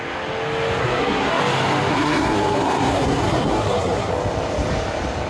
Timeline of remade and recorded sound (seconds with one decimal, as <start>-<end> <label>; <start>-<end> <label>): 0.0-0.8 recorded; 0.8-1.4 remade; 1.4-1.9 recorded; 1.9-4.1 remade; 4.1-5.3 recorded